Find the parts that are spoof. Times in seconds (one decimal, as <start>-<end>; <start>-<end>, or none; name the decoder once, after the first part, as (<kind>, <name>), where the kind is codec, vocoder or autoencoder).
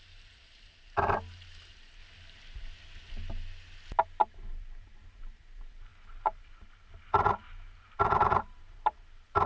0.0-2.0 (vocoder, BigVGAN v2); 4.2-9.5